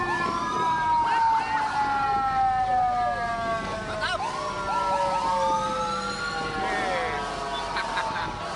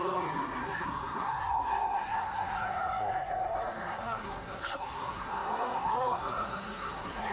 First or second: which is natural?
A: first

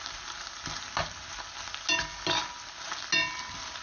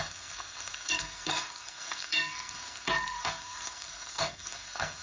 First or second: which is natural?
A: first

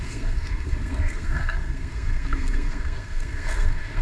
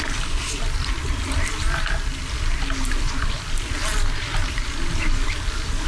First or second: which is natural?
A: second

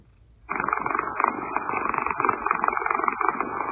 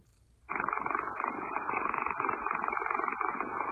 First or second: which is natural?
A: first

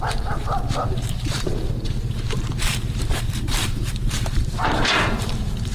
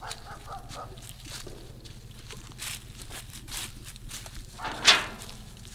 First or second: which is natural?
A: second